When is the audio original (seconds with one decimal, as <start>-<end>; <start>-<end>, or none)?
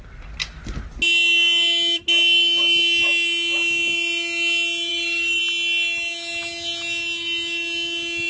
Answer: 0.0-4.9; 5.4-8.3